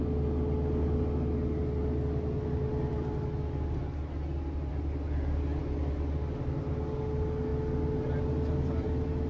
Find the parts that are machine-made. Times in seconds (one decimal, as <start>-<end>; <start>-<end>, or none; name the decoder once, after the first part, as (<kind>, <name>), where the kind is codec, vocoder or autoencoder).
none